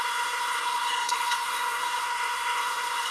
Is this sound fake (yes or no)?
yes